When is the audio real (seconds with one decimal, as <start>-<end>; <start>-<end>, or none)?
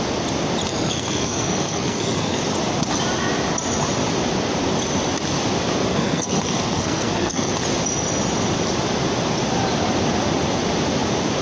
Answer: 0.0-0.7; 2.4-5.9; 7.5-11.4